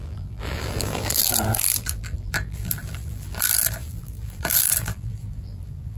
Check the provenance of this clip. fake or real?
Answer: fake